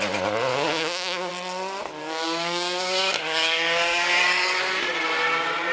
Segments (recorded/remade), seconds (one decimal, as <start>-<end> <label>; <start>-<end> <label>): 0.0-0.5 recorded; 0.5-1.3 remade; 1.3-2.0 recorded; 2.0-4.6 remade; 4.6-5.7 recorded